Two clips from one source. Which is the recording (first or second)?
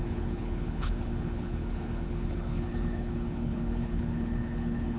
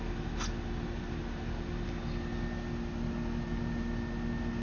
second